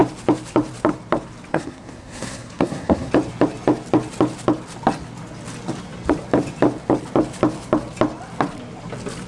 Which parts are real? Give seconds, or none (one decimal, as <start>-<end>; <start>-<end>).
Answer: 0.0-1.5; 3.1-9.3